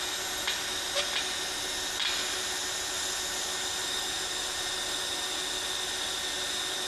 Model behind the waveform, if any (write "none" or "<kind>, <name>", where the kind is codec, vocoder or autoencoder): none